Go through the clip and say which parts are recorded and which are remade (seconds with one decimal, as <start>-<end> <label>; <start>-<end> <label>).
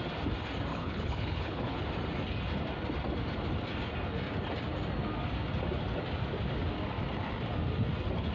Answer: 0.0-0.7 recorded; 0.7-1.8 remade; 1.8-8.3 recorded